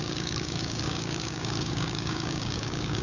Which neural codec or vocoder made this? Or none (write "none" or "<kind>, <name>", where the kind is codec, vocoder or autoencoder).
codec, DAC